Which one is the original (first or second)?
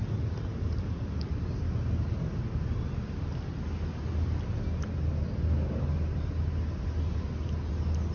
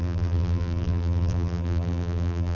first